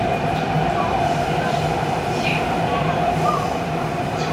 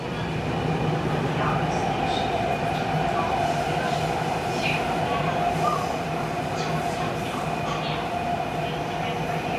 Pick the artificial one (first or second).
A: first